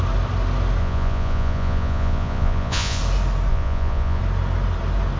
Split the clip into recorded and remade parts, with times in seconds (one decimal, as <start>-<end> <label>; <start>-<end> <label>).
0.0-0.8 recorded; 0.8-3.0 remade; 3.0-3.5 recorded; 3.5-4.2 remade; 4.2-5.2 recorded

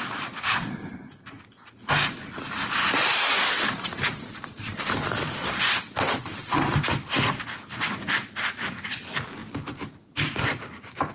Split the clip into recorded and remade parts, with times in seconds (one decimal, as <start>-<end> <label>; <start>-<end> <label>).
0.0-3.0 recorded; 3.0-8.1 remade; 8.1-9.4 recorded; 9.4-11.1 remade

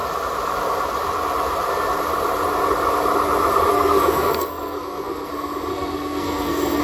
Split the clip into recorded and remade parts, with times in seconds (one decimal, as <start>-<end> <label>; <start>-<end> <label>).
0.0-3.7 recorded; 3.7-5.3 remade; 5.3-5.7 recorded; 5.7-6.8 remade

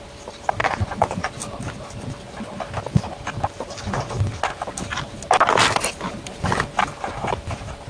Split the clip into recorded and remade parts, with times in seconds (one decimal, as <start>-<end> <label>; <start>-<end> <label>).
0.0-0.6 recorded; 0.6-1.3 remade; 1.3-7.9 recorded